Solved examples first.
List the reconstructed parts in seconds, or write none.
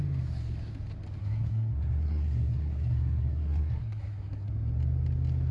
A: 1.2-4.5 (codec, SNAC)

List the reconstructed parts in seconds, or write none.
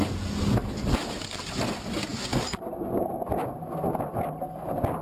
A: none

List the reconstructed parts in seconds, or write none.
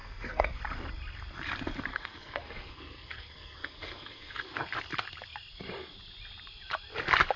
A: 0.0-0.6 (codec, SNAC); 1.9-4.5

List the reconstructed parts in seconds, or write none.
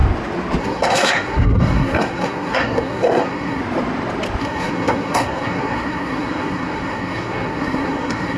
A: 0.6-3.6 (codec, SNAC); 4.4-8.4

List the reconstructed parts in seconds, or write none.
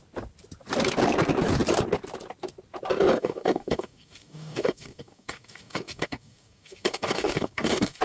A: 3.1-8.0 (codec, DAC)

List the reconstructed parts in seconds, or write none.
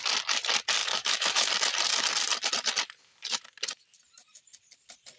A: 0.8-1.5 (autoencoder, DAC-VAE)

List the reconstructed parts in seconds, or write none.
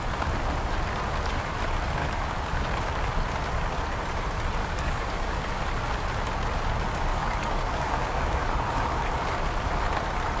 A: 2.0-2.6 (codec, DAC); 4.6-5.6; 7.1-9.1